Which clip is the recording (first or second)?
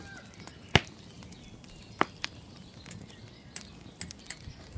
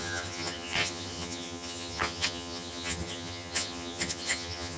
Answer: first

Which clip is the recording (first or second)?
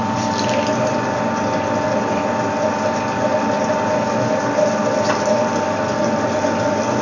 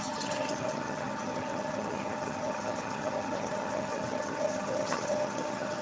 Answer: first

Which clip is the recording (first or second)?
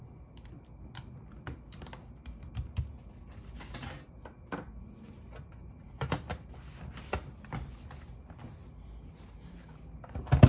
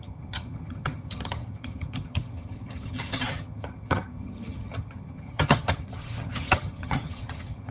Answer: first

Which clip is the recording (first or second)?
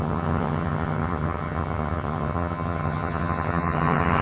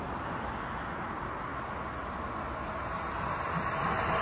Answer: second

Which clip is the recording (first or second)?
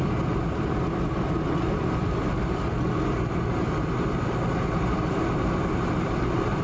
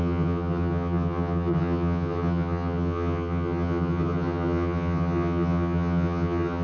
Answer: first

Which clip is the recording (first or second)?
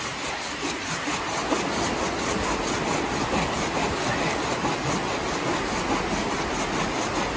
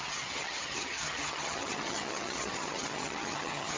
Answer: first